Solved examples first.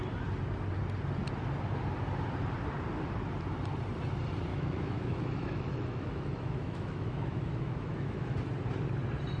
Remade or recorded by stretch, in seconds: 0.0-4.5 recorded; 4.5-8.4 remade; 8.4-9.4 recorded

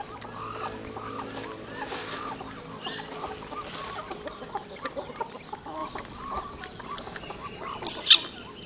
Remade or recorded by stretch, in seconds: 0.0-8.7 recorded

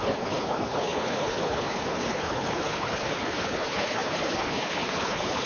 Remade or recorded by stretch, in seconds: 0.0-5.5 remade

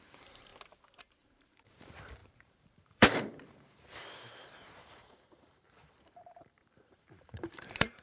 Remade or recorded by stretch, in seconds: 0.0-0.5 remade; 0.5-1.0 recorded; 1.0-8.0 remade